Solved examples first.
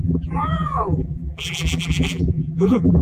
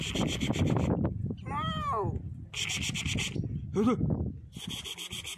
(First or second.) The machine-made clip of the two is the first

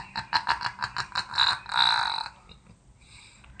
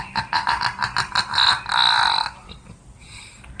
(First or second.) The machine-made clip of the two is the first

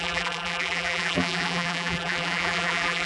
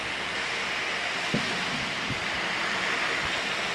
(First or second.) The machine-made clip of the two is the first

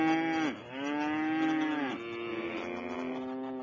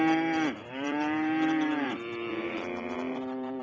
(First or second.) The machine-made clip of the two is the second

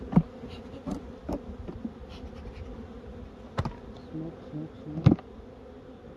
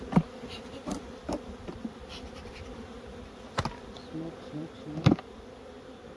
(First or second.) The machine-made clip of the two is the second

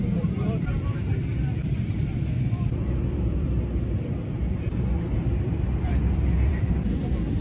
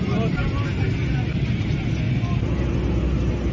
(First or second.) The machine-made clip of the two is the first